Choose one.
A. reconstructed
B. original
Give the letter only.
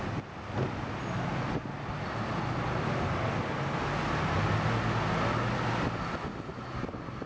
B